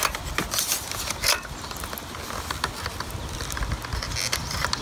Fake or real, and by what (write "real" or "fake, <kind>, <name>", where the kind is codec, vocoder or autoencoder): real